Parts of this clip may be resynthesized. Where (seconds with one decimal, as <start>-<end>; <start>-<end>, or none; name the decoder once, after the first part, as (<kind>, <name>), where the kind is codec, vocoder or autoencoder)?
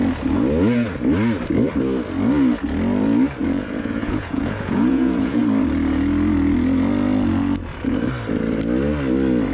3.4-5.4 (vocoder, Vocos)